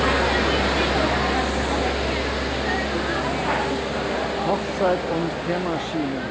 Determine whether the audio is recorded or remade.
recorded